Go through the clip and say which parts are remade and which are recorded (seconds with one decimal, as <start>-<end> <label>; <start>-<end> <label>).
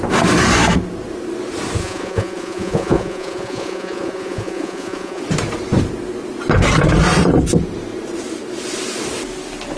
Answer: 0.0-1.8 recorded; 1.8-5.2 remade; 5.2-9.8 recorded